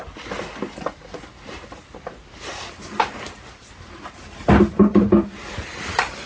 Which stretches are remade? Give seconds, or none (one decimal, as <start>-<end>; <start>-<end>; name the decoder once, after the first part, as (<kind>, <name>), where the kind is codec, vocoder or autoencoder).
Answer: none